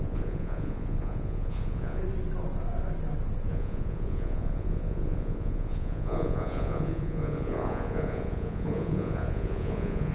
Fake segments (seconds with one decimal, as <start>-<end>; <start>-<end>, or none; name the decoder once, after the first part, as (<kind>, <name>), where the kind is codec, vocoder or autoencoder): 0.0-2.0 (vocoder, Vocos); 3.5-10.1